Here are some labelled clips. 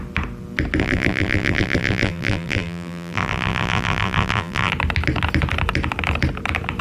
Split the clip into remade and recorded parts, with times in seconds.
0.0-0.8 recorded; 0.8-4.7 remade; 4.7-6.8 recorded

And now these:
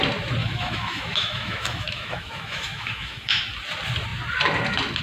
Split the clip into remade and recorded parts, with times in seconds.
0.0-0.4 recorded; 0.4-3.4 remade; 3.4-5.0 recorded

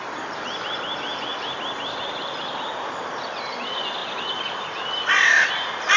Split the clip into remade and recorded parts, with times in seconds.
0.0-4.0 recorded; 4.0-5.5 remade; 5.5-6.0 recorded

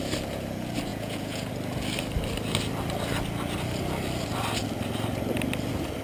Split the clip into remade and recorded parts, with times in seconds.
0.0-0.9 recorded; 0.9-1.5 remade; 1.5-6.0 recorded

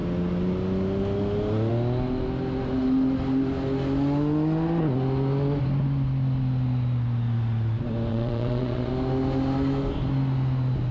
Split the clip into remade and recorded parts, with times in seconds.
0.0-8.1 recorded; 8.1-8.9 remade; 8.9-10.9 recorded

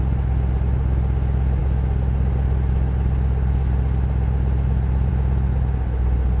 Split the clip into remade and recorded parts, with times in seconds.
0.0-6.4 recorded